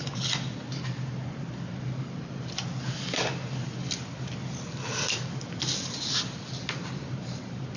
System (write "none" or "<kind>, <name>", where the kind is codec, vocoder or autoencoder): none